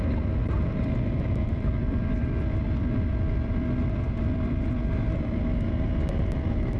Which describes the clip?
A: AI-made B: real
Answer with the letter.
A